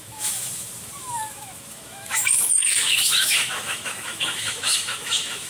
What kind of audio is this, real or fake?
fake